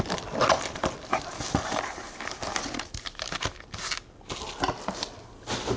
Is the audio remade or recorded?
recorded